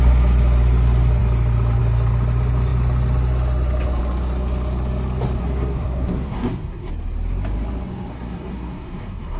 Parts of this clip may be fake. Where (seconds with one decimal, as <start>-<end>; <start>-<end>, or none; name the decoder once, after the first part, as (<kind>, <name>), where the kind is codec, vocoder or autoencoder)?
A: 5.4-6.9 (codec, SNAC); 8.1-9.4